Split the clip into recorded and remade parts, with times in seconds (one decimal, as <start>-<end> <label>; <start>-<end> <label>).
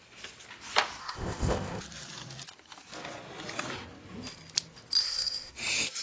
0.0-1.0 recorded; 1.0-1.8 remade; 1.8-5.0 recorded; 5.0-5.5 remade; 5.5-6.0 recorded